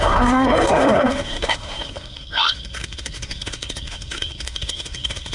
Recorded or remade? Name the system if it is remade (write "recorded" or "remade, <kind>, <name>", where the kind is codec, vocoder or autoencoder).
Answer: remade, codec, SNAC